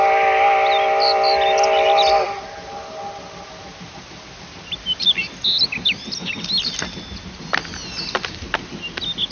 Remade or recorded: recorded